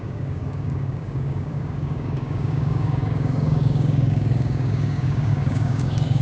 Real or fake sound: fake